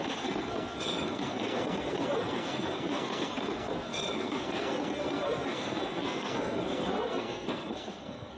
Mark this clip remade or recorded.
remade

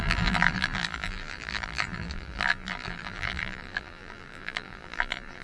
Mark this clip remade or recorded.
remade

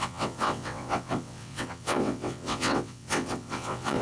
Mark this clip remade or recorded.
remade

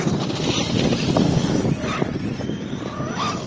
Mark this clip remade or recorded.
recorded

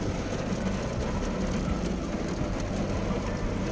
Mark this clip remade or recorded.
recorded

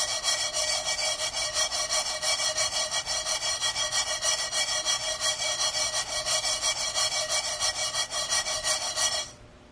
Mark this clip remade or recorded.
recorded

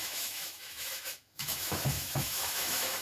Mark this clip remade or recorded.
remade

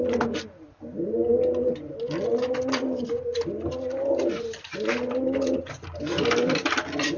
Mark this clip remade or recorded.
recorded